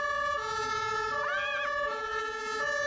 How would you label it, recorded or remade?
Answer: recorded